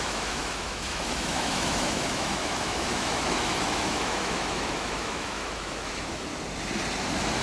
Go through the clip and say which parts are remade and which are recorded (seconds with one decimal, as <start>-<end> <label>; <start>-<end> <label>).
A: 0.0-6.3 remade; 6.3-7.4 recorded